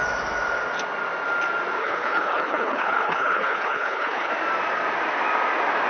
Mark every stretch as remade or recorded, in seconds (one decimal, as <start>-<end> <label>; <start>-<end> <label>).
0.0-1.8 recorded; 1.8-4.3 remade; 4.3-5.9 recorded

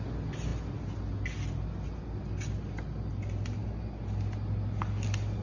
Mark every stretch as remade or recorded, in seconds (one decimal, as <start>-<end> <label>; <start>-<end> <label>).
0.0-5.4 recorded

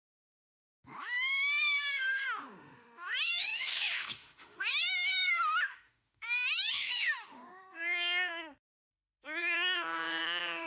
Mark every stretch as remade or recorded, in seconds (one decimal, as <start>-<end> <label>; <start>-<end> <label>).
0.0-10.7 remade

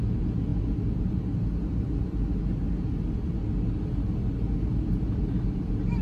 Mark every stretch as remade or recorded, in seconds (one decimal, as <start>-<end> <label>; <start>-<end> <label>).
0.0-6.0 recorded

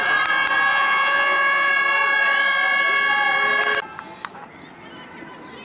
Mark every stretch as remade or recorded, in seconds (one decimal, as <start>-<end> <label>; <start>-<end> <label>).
0.0-0.7 recorded; 0.7-1.7 remade; 1.7-5.6 recorded